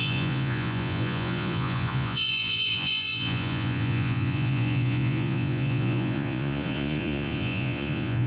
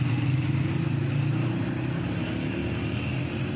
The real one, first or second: second